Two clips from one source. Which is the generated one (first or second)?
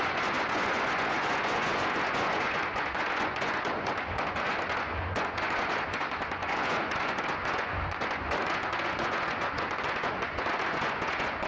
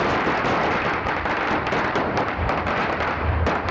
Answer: first